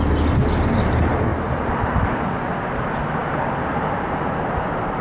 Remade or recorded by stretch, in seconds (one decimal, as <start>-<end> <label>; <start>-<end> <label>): 0.0-5.0 recorded